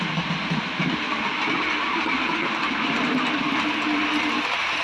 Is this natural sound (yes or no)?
yes